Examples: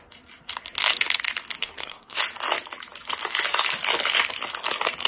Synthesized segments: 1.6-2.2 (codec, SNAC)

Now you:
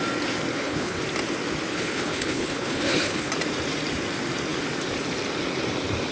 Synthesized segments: 0.5-1.0 (codec, HILCodec); 1.7-3.3

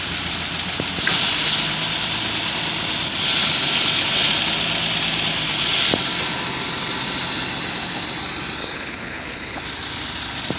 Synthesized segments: 8.6-9.6 (codec, HILCodec)